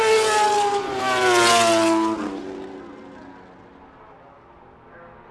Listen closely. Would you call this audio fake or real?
real